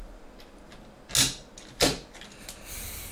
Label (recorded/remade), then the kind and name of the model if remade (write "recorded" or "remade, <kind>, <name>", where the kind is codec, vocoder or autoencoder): recorded